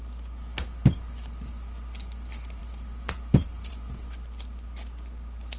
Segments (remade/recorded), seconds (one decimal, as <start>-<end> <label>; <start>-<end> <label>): 0.0-5.6 recorded

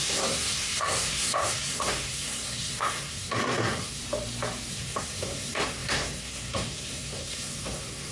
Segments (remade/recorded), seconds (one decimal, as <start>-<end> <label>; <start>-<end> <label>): 0.0-4.0 remade; 4.0-4.7 recorded; 4.7-8.1 remade

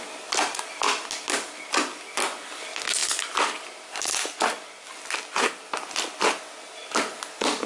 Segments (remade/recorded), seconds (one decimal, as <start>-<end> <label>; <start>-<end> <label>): 0.0-3.0 recorded; 3.0-3.9 remade; 3.9-7.7 recorded

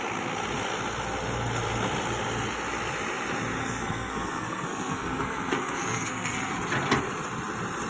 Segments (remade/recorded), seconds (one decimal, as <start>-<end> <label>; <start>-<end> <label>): 0.0-3.6 recorded; 3.6-6.5 remade; 6.5-7.9 recorded

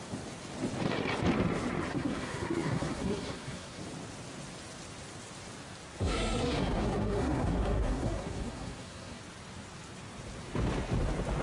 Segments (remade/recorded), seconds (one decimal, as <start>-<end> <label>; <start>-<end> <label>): 0.0-1.9 recorded; 1.9-3.8 remade; 3.8-5.9 recorded; 5.9-9.2 remade; 9.2-11.4 recorded